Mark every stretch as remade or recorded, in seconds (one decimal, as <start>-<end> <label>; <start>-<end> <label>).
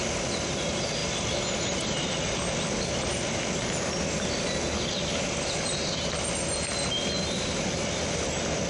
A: 0.0-8.7 recorded